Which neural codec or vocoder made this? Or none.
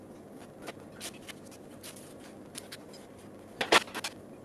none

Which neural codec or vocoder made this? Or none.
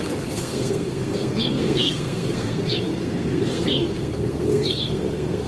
codec, SNAC